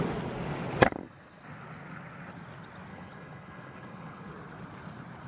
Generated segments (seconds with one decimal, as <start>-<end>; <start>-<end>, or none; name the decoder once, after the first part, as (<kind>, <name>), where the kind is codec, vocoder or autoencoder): 2.9-4.3 (codec, HILCodec)